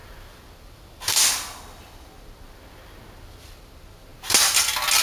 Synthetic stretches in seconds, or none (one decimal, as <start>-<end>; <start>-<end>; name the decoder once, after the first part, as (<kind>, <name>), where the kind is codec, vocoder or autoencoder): none